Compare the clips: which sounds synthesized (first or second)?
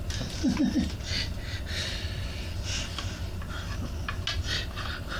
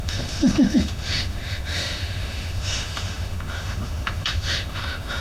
second